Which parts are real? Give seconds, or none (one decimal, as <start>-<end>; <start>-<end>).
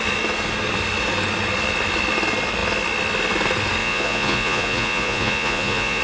0.0-3.8